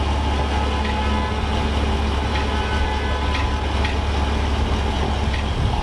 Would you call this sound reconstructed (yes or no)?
no